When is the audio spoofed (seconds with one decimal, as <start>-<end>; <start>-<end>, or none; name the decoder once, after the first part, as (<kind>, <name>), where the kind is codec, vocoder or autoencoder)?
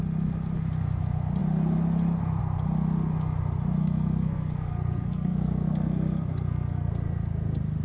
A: 3.8-6.9 (codec, SNAC)